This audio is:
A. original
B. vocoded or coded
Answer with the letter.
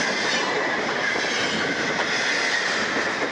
A